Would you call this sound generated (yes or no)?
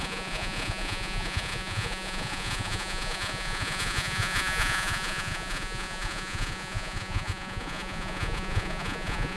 yes